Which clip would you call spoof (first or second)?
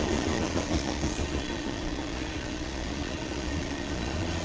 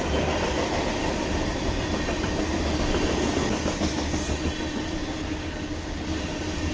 first